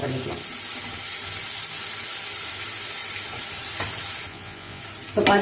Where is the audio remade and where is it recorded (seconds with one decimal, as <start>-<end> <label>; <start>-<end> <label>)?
0.0-4.3 recorded; 4.3-4.8 remade; 4.8-5.4 recorded